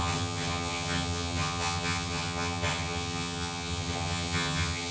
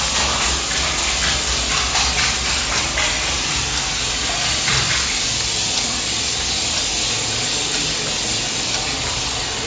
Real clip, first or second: second